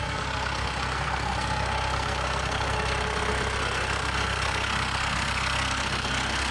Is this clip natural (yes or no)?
no